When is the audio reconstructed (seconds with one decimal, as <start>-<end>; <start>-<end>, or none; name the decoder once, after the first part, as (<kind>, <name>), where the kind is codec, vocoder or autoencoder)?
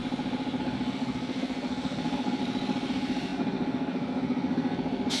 0.6-2.4 (codec, SNAC); 2.9-5.2